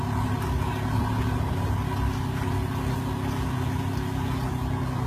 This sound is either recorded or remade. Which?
recorded